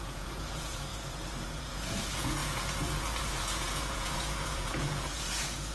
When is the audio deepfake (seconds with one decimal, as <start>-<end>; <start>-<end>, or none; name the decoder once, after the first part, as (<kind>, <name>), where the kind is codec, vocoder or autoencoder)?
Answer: 0.0-5.7 (vocoder, Vocos)